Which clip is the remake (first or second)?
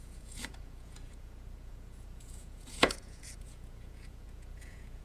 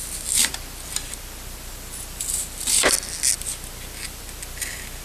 first